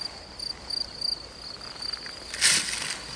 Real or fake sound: real